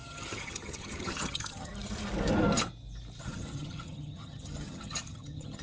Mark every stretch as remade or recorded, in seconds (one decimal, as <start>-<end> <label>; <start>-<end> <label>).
0.0-1.7 remade; 1.7-3.2 recorded; 3.2-5.6 remade